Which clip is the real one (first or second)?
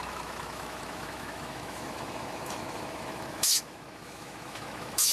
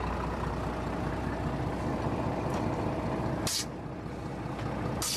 second